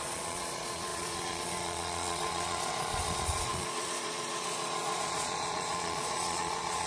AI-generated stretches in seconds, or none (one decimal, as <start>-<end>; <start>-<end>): 0.0-6.9